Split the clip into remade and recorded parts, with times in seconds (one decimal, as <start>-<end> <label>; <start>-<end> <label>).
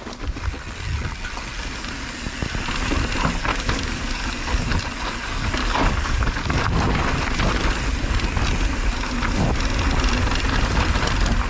0.0-3.5 recorded; 3.5-4.7 remade; 4.7-5.6 recorded; 5.6-6.6 remade; 6.6-11.5 recorded